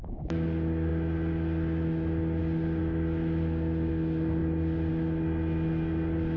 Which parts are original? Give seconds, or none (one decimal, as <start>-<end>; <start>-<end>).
0.0-6.4